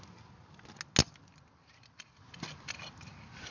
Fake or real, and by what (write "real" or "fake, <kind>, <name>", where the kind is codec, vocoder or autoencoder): real